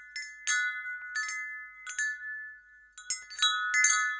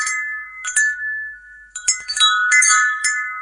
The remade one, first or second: second